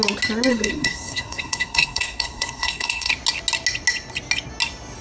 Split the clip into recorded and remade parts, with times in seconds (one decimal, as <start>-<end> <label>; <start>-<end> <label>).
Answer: 0.0-0.5 recorded; 0.5-3.1 remade; 3.1-5.0 recorded